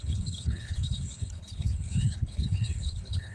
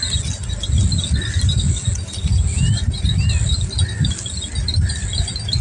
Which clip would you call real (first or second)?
second